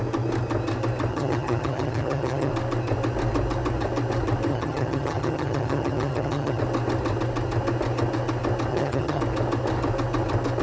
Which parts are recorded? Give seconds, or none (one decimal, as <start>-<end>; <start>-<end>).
0.0-1.1; 2.5-4.5; 6.6-8.7; 9.2-10.6